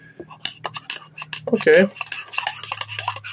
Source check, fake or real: real